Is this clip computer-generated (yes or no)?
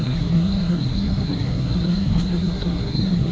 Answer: yes